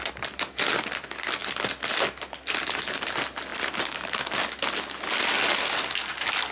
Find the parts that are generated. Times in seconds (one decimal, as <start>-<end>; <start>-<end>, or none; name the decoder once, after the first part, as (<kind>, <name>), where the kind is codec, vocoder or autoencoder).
none